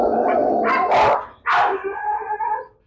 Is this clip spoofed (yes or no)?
no